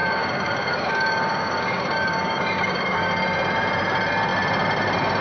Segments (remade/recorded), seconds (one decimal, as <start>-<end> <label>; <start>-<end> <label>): 0.0-3.1 remade; 3.1-5.2 recorded